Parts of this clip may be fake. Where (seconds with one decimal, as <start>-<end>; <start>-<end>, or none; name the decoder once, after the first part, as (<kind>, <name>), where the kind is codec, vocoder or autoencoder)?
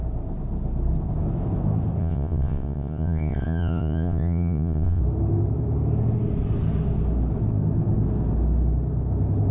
2.0-5.0 (vocoder, Vocos)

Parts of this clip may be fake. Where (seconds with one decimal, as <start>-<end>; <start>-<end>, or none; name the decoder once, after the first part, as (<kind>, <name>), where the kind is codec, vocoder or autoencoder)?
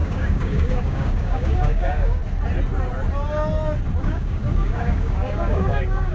0.0-2.2 (codec, DAC); 4.0-6.1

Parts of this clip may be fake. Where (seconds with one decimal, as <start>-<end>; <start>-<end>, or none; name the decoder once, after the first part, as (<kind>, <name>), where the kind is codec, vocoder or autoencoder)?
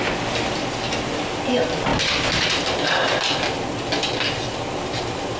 1.9-5.4 (vocoder, BigVGAN v2)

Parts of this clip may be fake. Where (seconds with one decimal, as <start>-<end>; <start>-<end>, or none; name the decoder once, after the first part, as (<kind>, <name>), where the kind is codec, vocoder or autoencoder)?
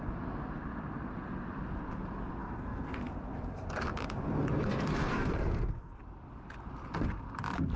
2.4-3.0 (codec, SNAC); 5.0-6.0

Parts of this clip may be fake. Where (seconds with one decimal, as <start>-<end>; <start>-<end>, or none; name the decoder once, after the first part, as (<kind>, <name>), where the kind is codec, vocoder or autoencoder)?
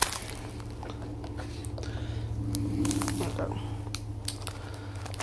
none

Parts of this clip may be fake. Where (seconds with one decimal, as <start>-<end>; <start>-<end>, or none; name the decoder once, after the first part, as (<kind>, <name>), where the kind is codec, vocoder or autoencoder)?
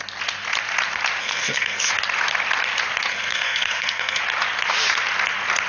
1.2-1.9 (codec, SNAC); 3.1-4.2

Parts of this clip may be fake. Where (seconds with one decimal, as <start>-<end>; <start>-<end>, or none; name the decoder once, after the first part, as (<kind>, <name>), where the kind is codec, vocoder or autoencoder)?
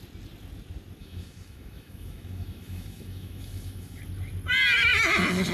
1.0-4.0 (autoencoder, DAC-VAE)